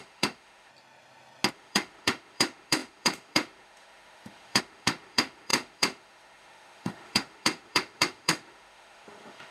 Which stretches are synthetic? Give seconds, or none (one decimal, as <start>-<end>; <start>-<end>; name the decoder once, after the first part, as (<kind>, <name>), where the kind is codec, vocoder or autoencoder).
0.0-0.7 (autoencoder, DAC-VAE); 1.5-9.5